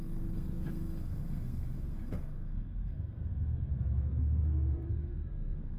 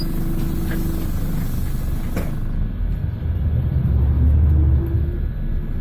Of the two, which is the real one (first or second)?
second